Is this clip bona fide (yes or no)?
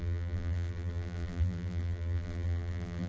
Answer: no